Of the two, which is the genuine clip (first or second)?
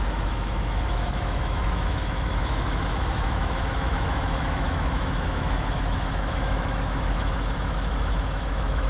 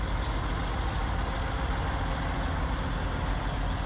second